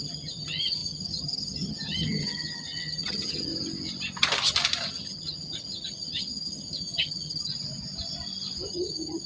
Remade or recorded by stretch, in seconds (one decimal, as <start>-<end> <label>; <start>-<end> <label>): 0.0-3.5 remade; 3.5-4.9 recorded; 4.9-7.5 remade; 7.5-8.7 recorded; 8.7-9.3 remade